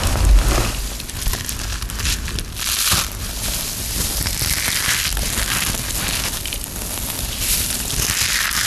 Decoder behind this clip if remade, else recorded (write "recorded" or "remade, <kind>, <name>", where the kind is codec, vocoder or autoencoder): recorded